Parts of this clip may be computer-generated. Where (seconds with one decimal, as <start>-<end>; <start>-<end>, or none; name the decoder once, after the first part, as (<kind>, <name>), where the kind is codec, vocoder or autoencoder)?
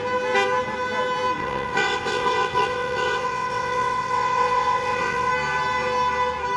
1.4-5.3 (vocoder, WaveNeXt)